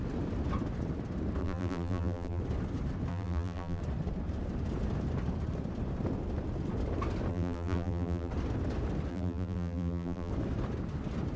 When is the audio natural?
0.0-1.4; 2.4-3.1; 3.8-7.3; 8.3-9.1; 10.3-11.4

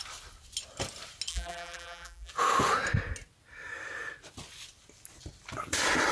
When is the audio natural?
0.0-1.3; 2.3-6.1

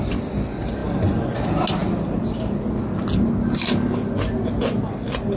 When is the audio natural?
0.0-5.4

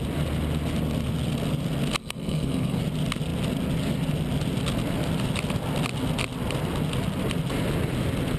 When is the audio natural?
0.0-2.0; 2.8-8.4

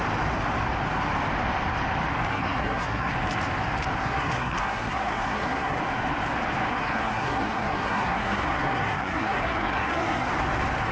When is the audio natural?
0.0-2.3; 3.1-4.0; 5.8-6.7; 10.3-10.9